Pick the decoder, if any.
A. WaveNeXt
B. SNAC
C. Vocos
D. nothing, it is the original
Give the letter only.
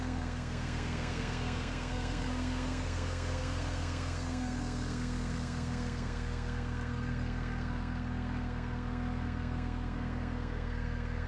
B